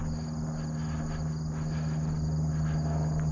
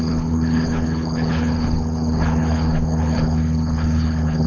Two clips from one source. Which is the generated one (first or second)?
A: second